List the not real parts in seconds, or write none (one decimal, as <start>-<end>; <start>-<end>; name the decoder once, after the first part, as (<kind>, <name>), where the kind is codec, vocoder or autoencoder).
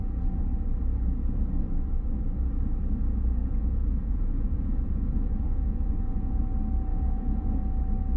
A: 3.4-6.4 (vocoder, Vocos); 6.9-7.6